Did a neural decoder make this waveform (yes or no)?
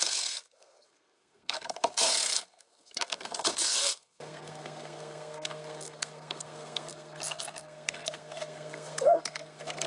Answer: yes